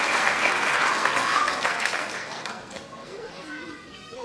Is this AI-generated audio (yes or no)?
yes